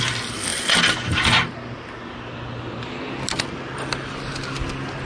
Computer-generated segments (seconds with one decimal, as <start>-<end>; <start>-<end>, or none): none